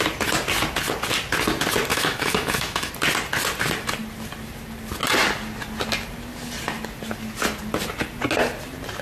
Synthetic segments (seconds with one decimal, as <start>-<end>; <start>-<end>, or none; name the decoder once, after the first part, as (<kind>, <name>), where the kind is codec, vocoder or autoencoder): 1.9-2.9 (autoencoder, DAC-VAE)